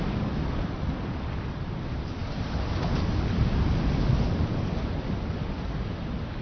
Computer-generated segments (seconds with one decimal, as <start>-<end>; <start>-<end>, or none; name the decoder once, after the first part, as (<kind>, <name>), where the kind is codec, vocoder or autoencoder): none